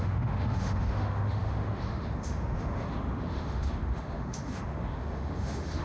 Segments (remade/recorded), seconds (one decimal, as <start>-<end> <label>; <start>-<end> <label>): 0.0-5.8 remade